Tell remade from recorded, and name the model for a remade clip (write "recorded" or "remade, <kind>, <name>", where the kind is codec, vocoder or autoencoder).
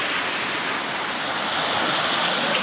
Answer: recorded